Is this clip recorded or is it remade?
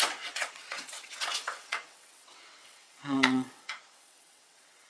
remade